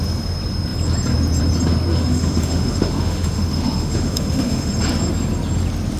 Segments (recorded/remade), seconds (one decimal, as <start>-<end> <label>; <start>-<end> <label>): 0.0-1.9 recorded; 1.9-4.7 remade; 4.7-6.0 recorded